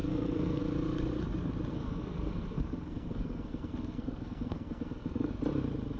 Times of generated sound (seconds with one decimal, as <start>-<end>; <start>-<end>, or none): 0.0-0.6; 1.7-5.3